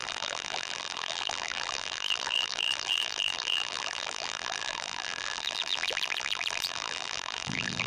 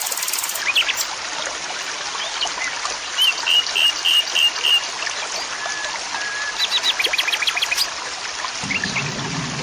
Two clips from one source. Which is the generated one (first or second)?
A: first